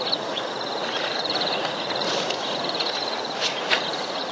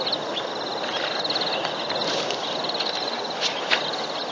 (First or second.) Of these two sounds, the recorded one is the second